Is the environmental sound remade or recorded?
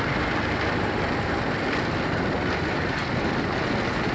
recorded